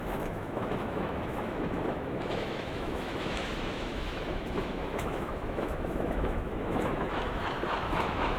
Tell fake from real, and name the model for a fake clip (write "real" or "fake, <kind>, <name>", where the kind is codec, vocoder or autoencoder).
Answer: fake, autoencoder, DAC-VAE